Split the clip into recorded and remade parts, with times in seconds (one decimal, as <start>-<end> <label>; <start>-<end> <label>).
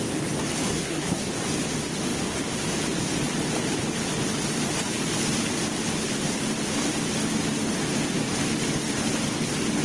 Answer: 0.0-0.7 recorded; 0.7-1.3 remade; 1.3-9.8 recorded